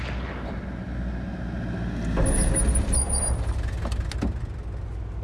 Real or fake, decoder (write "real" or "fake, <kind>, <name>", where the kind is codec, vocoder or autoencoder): real